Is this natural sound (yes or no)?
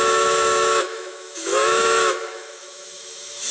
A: no